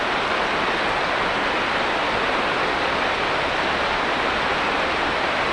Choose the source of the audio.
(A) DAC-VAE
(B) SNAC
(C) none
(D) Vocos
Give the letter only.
C